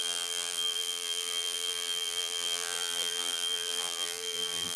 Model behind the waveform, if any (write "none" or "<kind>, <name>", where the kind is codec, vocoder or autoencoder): vocoder, BigVGAN v2